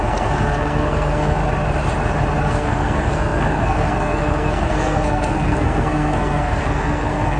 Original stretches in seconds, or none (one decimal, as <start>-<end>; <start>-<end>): 1.4-2.4